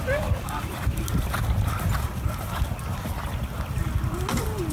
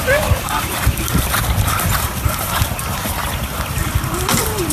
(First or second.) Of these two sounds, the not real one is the second